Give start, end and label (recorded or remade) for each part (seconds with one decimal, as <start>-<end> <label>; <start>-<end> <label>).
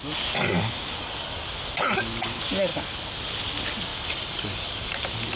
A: 0.0-1.0 recorded; 1.0-1.5 remade; 1.5-3.9 recorded; 3.9-4.9 remade; 4.9-5.4 recorded